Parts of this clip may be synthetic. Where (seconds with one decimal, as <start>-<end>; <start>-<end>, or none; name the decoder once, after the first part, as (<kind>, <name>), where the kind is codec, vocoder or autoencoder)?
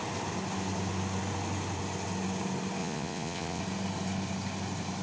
2.8-3.6 (vocoder, Vocos)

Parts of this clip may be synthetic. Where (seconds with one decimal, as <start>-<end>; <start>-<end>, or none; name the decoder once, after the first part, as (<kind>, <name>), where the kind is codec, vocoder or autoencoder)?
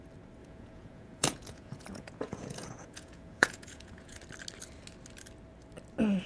0.4-4.2 (vocoder, Vocos)